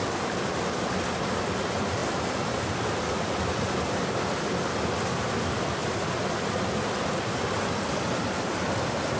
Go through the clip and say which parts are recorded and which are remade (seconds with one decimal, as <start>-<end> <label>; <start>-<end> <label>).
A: 0.0-9.2 recorded